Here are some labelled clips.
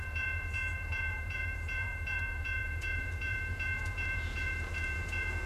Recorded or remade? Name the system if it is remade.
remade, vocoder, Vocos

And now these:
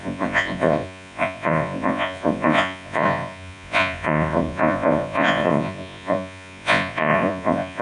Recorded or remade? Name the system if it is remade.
remade, vocoder, Vocos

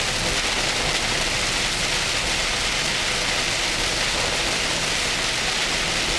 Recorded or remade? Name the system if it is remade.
recorded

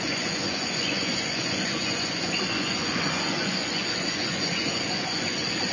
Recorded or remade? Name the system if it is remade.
remade, vocoder, Vocos